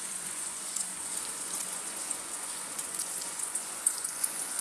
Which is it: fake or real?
fake